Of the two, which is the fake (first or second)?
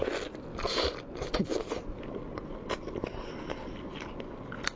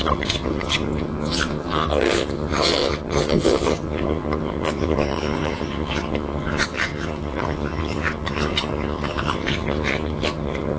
second